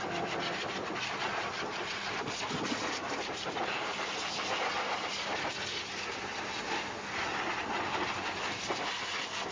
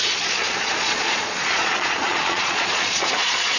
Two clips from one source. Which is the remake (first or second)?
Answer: second